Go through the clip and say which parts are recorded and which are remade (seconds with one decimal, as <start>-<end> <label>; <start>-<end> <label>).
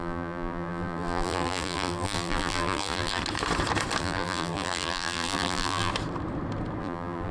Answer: 0.0-3.2 remade; 3.2-4.0 recorded; 4.0-5.9 remade; 5.9-6.8 recorded; 6.8-7.3 remade